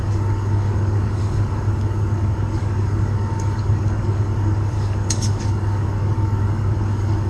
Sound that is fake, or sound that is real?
fake